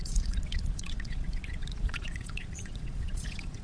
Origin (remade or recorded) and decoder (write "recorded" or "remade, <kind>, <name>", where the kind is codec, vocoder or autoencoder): remade, vocoder, Vocos